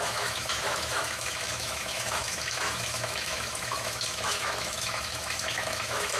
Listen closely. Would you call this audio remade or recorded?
remade